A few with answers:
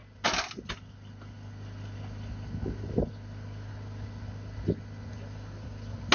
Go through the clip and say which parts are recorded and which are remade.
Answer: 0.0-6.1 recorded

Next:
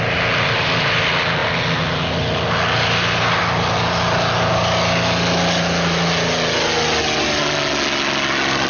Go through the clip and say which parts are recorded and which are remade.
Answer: 0.0-8.7 recorded

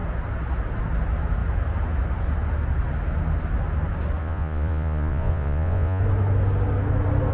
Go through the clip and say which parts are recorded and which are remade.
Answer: 0.0-4.2 recorded; 4.2-6.0 remade; 6.0-7.3 recorded

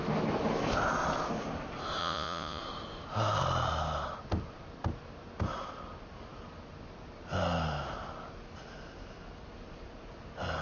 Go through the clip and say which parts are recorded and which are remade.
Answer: 0.0-2.0 recorded; 2.0-2.6 remade; 2.6-10.6 recorded